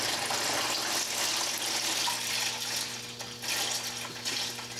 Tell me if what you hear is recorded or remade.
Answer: recorded